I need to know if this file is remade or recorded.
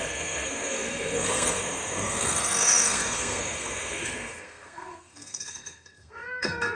remade